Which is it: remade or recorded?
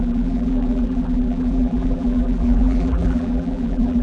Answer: remade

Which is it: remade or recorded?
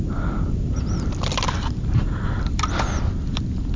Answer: remade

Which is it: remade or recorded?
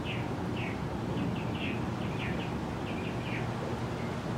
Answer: recorded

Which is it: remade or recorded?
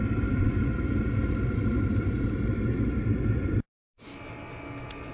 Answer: remade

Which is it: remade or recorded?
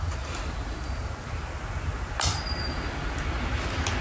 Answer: recorded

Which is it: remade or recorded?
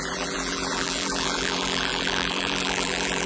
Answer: remade